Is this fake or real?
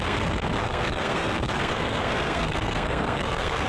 fake